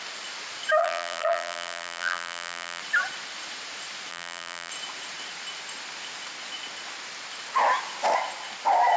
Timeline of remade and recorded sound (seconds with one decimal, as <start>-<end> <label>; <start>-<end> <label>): 0.0-0.8 recorded; 0.8-2.8 remade; 2.8-4.1 recorded; 4.1-4.7 remade; 4.7-9.0 recorded